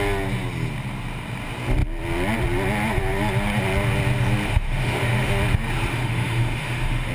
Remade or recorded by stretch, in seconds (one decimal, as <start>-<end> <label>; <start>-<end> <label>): 0.0-4.5 recorded; 4.5-5.3 remade; 5.3-5.9 recorded; 5.9-7.1 remade